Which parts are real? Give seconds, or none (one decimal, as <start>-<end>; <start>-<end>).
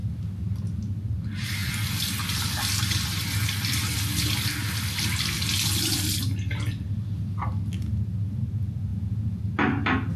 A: 0.0-8.9; 9.4-10.2